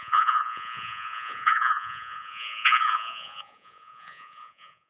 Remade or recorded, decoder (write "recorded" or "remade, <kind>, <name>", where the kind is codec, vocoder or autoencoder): remade, vocoder, Vocos